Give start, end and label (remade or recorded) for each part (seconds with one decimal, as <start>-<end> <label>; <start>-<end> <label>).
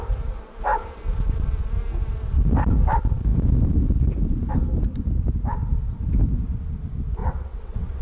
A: 0.0-7.2 recorded; 7.2-8.0 remade